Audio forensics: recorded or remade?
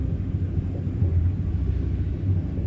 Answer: recorded